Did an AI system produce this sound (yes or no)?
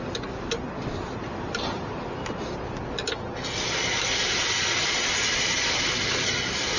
no